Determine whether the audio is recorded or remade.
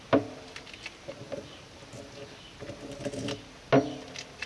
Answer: recorded